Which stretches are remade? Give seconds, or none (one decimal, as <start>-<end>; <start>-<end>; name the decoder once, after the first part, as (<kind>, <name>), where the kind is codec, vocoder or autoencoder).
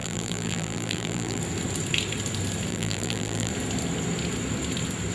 0.0-1.4 (vocoder, BigVGAN v2); 2.7-3.5